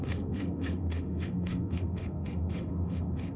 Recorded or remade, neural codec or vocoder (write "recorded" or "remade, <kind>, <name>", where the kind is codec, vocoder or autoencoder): remade, autoencoder, DAC-VAE